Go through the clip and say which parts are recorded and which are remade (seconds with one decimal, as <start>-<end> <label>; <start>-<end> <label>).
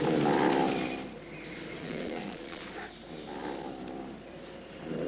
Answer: 0.0-1.8 recorded; 1.8-2.6 remade; 2.6-5.1 recorded